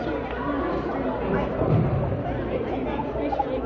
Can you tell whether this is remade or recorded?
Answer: recorded